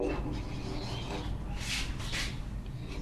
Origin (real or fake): real